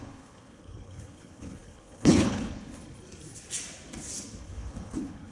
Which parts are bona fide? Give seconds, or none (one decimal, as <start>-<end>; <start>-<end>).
2.8-4.4